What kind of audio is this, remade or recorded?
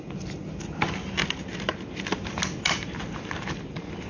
recorded